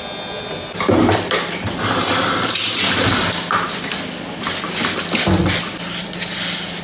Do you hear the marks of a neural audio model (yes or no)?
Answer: no